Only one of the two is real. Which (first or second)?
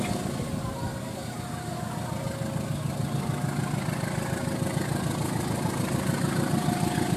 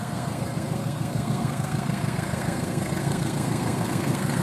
first